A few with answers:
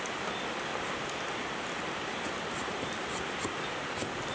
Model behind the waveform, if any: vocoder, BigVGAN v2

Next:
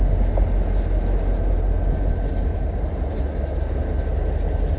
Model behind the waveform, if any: none